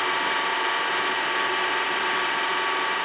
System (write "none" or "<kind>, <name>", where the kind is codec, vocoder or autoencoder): none